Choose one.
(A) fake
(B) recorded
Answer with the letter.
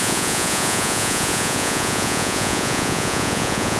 A